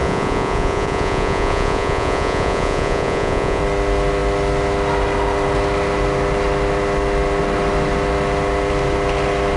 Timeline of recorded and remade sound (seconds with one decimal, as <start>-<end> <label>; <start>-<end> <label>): 0.0-3.6 remade; 3.6-9.6 recorded